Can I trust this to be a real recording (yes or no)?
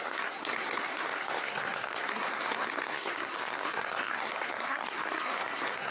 no